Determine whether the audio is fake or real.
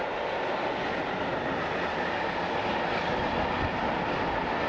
real